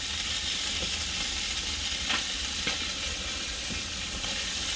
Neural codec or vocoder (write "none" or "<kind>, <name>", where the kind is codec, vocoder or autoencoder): none